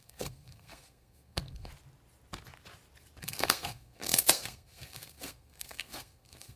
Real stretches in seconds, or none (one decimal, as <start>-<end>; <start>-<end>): 1.7-3.2